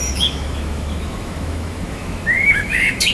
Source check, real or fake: fake